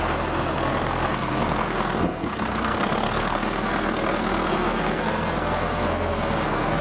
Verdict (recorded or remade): remade